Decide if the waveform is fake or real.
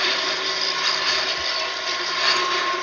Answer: real